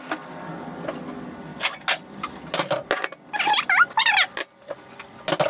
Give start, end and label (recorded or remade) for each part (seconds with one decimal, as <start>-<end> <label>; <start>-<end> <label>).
0.0-5.5 recorded